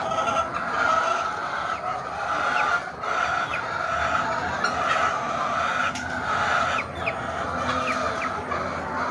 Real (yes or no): yes